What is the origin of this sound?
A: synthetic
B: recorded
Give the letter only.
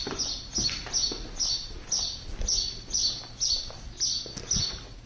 B